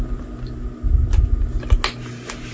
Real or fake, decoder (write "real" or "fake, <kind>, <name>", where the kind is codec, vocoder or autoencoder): real